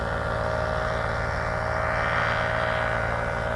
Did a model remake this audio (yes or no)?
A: no